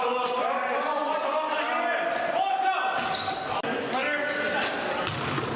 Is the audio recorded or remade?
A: recorded